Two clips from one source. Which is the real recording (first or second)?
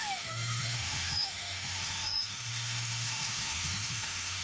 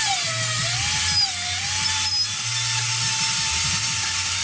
second